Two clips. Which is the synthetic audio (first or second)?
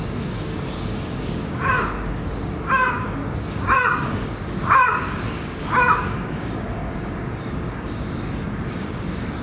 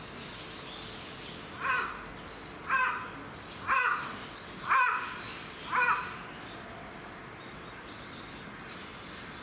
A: first